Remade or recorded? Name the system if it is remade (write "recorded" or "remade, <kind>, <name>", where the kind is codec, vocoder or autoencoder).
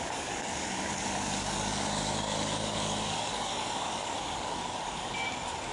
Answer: remade, codec, DAC